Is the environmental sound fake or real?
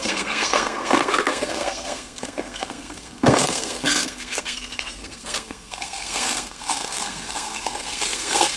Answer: fake